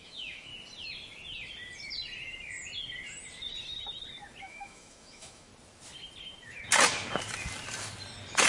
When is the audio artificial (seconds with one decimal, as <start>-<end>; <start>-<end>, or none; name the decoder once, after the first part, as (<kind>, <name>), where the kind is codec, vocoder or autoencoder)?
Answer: 0.0-0.5 (autoencoder, DAC-VAE); 4.4-5.5